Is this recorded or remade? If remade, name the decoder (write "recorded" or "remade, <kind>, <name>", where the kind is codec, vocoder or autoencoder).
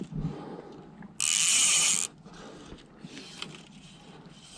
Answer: recorded